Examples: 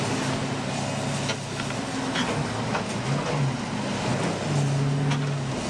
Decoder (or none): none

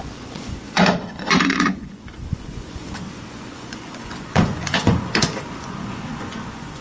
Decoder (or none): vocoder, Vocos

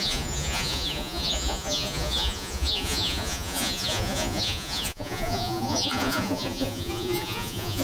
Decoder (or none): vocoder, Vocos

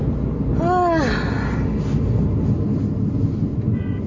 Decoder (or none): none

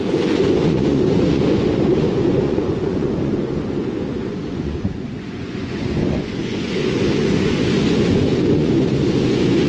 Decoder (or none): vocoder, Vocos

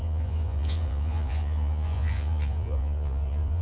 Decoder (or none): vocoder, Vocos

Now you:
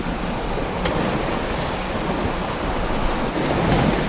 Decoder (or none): none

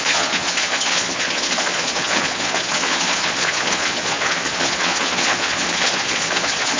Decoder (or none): vocoder, Vocos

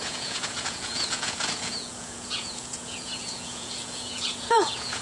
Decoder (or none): vocoder, Vocos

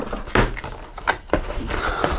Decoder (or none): none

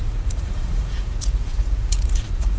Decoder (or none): vocoder, Vocos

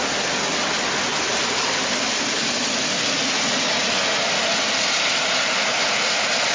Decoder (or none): none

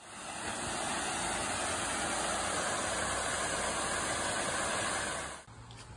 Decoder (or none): none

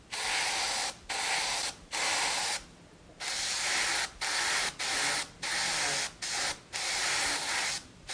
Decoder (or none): none